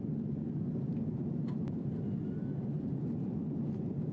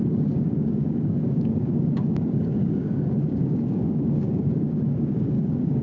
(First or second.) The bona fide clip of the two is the first